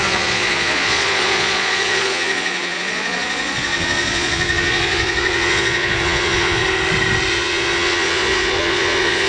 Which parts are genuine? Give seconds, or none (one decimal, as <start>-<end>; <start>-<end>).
6.6-7.3